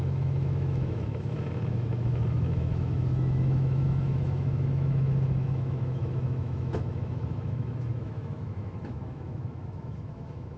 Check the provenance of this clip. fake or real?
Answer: fake